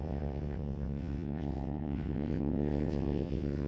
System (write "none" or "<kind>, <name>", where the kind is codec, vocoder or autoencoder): vocoder, WaveNeXt